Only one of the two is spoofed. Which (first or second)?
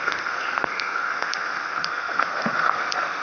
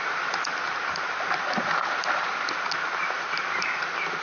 first